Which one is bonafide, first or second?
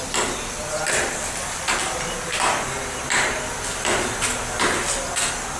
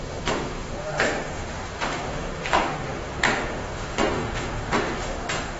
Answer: first